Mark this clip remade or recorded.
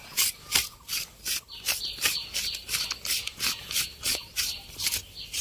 recorded